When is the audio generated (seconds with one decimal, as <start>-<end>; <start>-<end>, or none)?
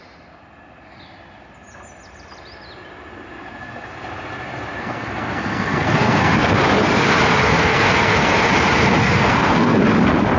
4.8-6.5; 7.6-8.5; 9.0-9.8